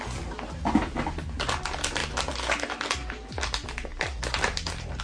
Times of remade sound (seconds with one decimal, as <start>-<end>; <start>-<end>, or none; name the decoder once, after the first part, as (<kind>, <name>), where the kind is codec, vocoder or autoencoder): none